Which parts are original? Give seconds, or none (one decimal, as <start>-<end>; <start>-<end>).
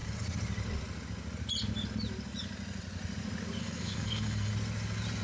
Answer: 0.0-3.6; 4.5-5.2